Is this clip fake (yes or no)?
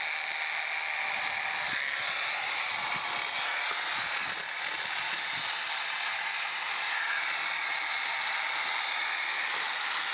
no